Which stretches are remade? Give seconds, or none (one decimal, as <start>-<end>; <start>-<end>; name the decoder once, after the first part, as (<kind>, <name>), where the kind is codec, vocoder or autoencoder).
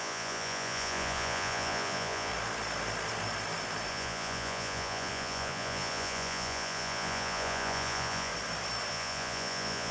0.0-2.3 (vocoder, Vocos); 3.9-8.3; 8.9-9.9